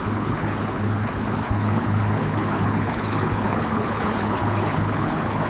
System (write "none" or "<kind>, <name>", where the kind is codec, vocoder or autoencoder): codec, HILCodec